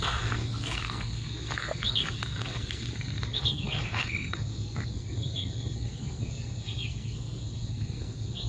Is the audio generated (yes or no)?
yes